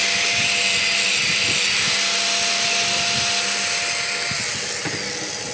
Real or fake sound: real